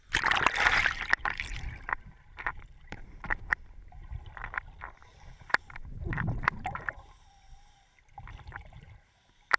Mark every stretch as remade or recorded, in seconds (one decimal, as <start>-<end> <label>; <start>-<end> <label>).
0.0-0.8 recorded; 0.8-4.1 remade; 4.1-5.0 recorded; 5.0-8.9 remade; 8.9-9.6 recorded